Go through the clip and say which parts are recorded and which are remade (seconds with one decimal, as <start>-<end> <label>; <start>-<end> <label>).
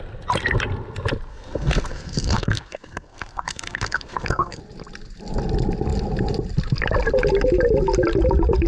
0.0-1.3 recorded; 1.3-4.6 remade; 4.6-8.7 recorded